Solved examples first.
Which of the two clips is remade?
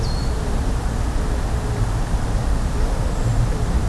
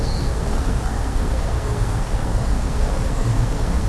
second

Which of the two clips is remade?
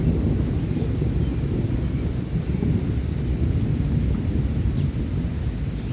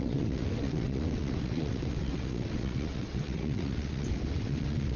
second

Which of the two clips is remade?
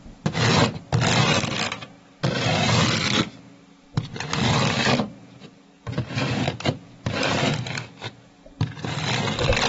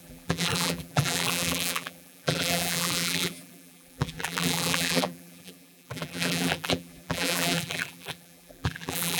second